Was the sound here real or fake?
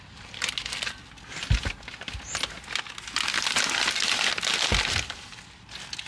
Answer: real